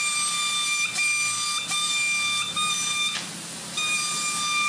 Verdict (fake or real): real